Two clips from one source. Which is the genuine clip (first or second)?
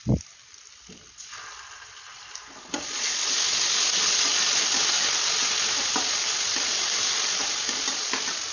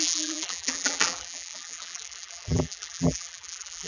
first